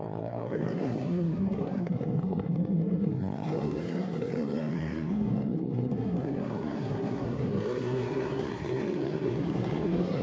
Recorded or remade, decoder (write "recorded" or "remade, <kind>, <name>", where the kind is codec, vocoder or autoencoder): remade, codec, SNAC